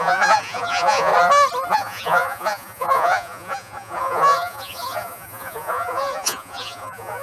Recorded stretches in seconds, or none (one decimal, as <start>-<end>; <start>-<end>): 1.1-1.7